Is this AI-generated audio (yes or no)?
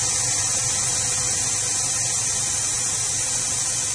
no